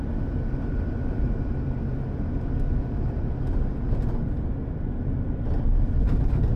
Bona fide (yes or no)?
yes